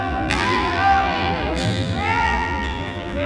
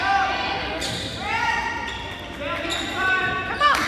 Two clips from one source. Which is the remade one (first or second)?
first